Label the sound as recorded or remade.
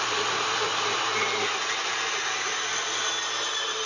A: recorded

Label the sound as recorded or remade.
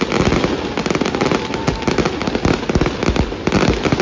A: recorded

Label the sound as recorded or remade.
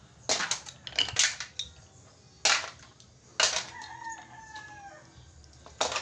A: recorded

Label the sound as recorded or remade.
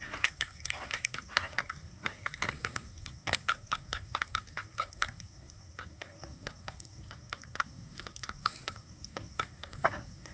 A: remade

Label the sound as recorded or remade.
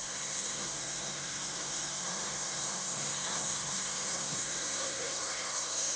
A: remade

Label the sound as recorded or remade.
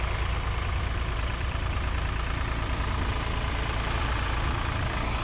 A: recorded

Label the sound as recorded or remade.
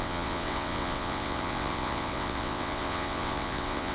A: remade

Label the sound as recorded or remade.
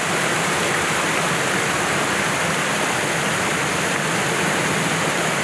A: recorded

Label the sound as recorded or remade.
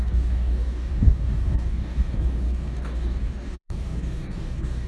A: remade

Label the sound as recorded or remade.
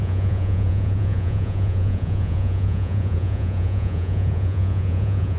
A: remade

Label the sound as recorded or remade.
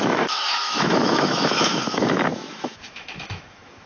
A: remade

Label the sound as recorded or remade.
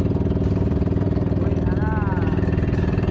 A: recorded